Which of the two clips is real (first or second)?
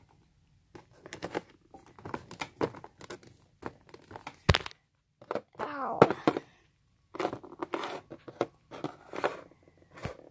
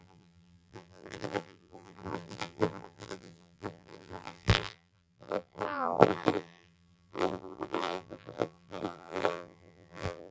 first